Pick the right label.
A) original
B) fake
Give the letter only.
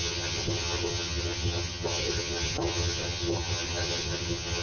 B